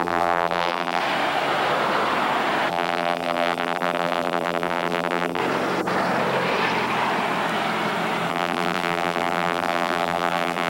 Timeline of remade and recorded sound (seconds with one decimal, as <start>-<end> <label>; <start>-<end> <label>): 0.0-1.0 remade; 1.0-2.7 recorded; 2.7-5.4 remade; 5.4-8.3 recorded; 8.3-10.7 remade